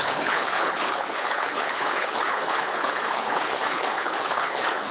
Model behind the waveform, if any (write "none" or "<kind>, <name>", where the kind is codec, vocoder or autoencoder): codec, HILCodec